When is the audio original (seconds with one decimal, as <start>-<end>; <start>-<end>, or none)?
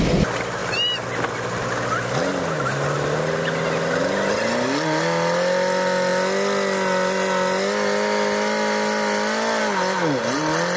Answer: 0.0-10.8